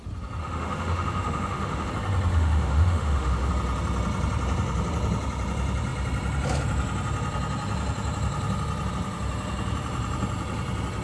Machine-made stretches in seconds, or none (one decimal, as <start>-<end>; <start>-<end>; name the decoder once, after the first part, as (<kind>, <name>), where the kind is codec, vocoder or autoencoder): 0.4-1.9 (autoencoder, DAC-VAE); 2.3-3.5